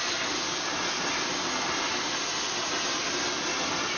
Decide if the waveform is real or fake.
real